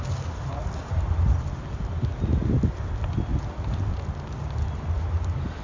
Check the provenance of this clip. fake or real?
real